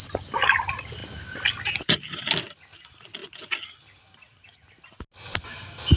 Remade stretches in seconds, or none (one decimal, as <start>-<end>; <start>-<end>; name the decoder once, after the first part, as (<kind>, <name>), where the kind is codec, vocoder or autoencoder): none